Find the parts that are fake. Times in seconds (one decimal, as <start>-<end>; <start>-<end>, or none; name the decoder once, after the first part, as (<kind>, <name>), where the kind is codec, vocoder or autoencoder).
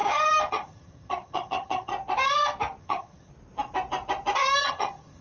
0.5-1.9 (vocoder, HiFi-GAN); 2.8-3.3; 4.6-5.2